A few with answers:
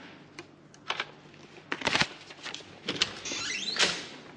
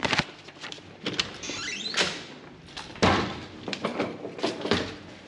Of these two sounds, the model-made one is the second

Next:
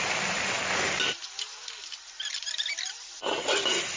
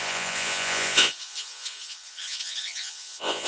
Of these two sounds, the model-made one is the second